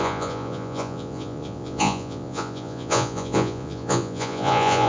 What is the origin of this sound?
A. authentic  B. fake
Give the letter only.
B